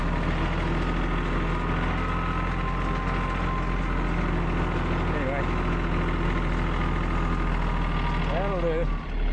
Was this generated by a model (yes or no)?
no